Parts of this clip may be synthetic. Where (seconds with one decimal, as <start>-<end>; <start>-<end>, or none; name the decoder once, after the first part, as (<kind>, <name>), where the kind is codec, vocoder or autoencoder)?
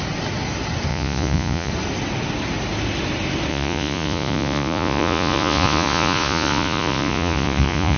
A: 0.9-1.7 (vocoder, Vocos); 3.5-8.0